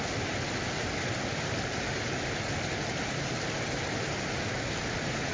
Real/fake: real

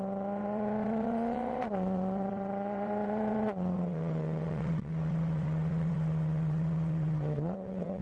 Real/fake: fake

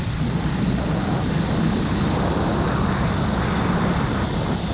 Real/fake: real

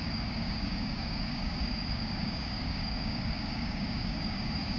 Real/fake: fake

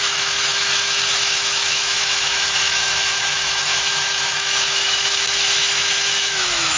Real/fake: fake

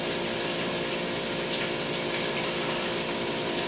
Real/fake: real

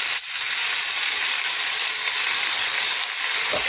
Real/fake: real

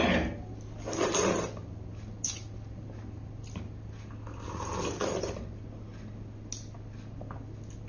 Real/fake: real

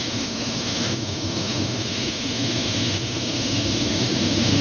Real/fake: fake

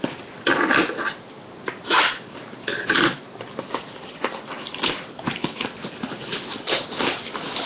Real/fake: real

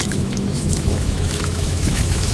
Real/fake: fake